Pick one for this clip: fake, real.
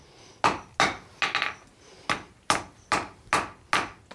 real